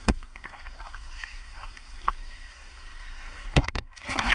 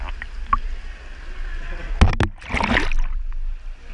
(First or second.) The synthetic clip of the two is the first